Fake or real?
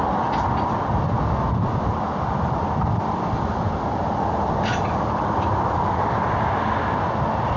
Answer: real